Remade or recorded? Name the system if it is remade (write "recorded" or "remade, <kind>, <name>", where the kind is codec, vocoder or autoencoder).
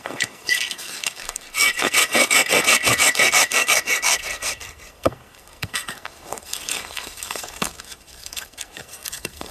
remade, codec, SNAC